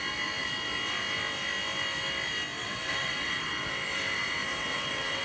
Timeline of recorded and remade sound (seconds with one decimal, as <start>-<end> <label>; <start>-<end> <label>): 0.0-2.6 recorded; 2.6-3.5 remade; 3.5-4.5 recorded; 4.5-5.2 remade